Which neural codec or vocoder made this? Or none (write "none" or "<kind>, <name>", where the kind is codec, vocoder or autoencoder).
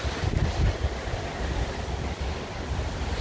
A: none